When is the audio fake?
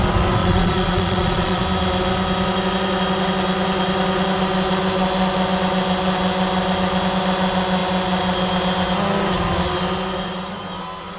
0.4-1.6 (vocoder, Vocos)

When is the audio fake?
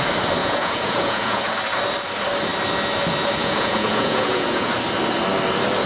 0.4-1.4 (vocoder, Vocos); 3.4-4.7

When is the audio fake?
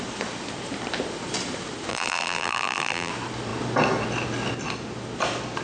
1.9-3.1 (vocoder, BigVGAN v2)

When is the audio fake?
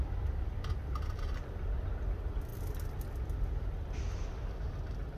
0.8-1.9 (vocoder, BigVGAN v2)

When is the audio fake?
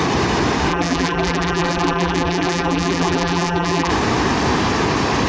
0.7-3.9 (vocoder, BigVGAN v2)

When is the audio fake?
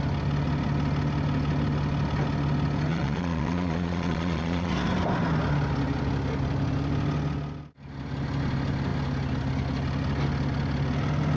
2.9-4.7 (vocoder, Vocos)